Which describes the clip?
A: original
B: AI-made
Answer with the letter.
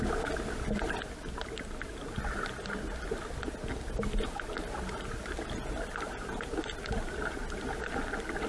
A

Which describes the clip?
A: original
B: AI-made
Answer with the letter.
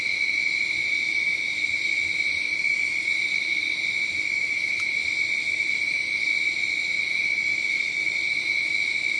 A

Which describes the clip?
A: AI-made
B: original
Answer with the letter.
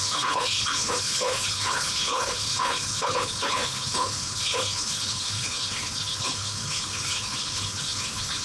A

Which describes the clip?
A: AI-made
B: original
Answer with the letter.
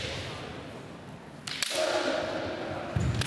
B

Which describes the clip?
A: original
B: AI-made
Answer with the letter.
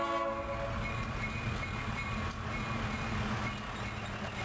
A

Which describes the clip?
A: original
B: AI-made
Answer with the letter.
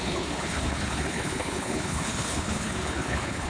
B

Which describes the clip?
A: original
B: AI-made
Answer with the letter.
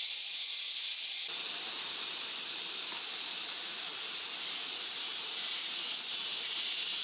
A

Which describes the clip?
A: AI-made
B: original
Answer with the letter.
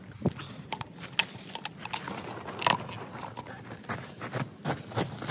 B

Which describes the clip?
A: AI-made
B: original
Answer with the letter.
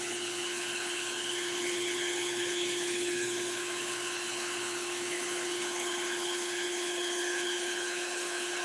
A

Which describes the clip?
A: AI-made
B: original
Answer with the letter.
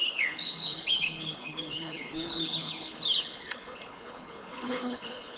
A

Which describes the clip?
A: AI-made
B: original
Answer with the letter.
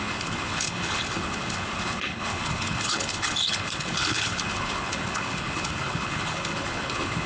A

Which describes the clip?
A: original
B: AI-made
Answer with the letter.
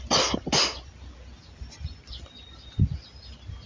A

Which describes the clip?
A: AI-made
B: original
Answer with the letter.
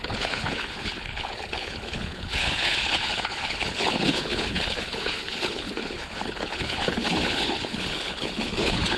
A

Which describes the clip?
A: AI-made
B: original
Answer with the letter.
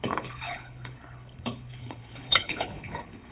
A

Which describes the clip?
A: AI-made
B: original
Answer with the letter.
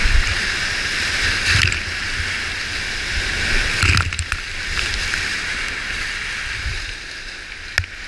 B